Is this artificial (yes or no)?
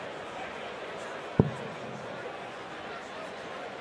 yes